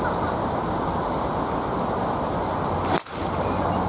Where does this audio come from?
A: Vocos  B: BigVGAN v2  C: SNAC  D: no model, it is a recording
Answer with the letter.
D